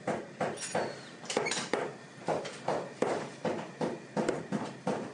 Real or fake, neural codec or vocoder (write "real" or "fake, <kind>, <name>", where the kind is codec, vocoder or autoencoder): fake, vocoder, BigVGAN v2